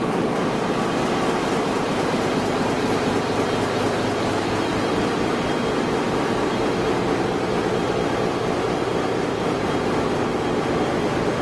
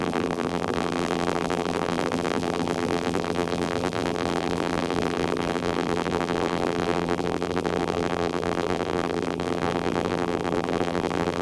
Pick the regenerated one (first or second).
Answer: second